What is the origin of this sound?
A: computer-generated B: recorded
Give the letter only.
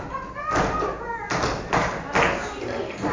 B